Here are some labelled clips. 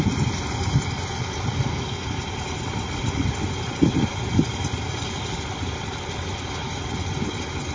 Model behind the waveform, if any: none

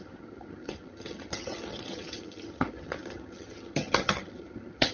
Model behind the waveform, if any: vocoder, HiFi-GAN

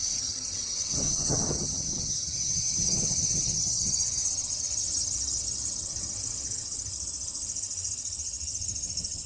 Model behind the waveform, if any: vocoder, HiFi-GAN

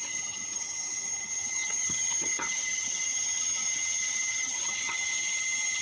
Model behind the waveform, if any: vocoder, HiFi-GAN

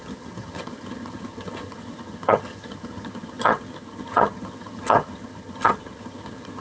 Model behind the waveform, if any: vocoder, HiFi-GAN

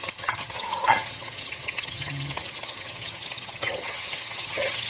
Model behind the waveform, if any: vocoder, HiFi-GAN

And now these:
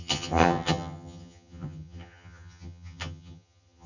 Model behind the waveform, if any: vocoder, HiFi-GAN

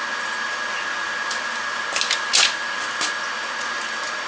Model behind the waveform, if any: none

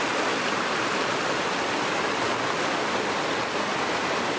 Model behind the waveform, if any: none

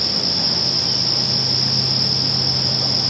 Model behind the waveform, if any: none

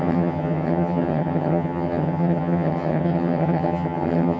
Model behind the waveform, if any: vocoder, HiFi-GAN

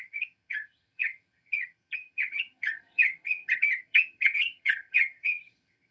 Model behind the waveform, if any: vocoder, HiFi-GAN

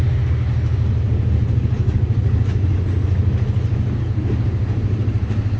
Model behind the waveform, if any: none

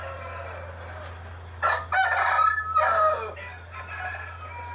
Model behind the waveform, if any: none